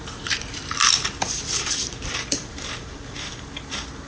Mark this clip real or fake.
fake